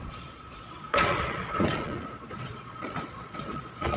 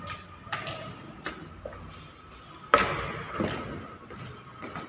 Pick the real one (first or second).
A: second